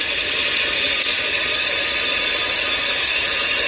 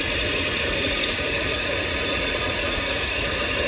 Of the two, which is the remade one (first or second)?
second